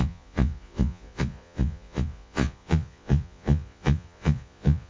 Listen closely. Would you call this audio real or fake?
fake